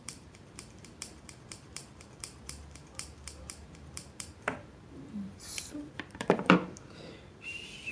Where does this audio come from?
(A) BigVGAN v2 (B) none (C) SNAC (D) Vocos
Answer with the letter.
A